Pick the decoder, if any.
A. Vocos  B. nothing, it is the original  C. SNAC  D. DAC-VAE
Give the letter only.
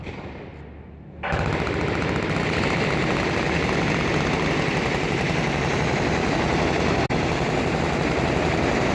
B